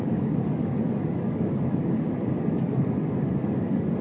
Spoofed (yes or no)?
yes